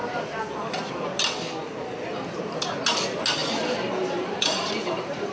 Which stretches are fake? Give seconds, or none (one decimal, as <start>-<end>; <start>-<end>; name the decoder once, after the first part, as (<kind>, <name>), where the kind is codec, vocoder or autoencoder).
3.4-5.3 (vocoder, BigVGAN v2)